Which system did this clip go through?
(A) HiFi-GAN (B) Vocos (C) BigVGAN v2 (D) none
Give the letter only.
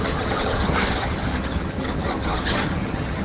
A